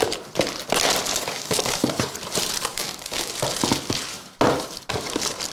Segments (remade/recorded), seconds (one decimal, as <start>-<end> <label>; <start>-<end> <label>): 0.0-1.1 recorded; 1.1-1.9 remade; 1.9-2.7 recorded; 2.7-3.3 remade; 3.3-5.5 recorded